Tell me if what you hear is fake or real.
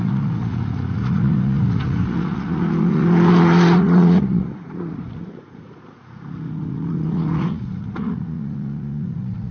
fake